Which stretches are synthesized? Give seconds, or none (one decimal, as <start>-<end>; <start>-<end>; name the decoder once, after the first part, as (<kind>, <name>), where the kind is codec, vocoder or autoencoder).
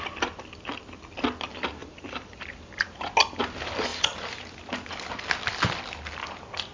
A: 1.8-3.1 (vocoder, BigVGAN v2)